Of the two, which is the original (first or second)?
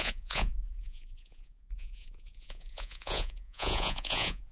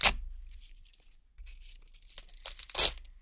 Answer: second